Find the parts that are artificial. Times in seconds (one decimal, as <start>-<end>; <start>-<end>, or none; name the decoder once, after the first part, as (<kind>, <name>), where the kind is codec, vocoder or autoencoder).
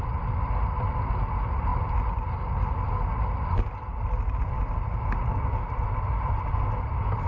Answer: none